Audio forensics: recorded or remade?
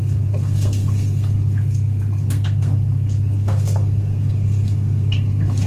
remade